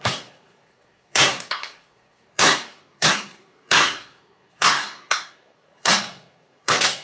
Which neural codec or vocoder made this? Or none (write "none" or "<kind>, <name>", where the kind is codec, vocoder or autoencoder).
codec, SNAC